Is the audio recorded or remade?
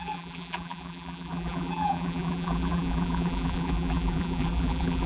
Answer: remade